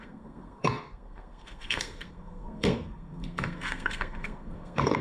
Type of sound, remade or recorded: remade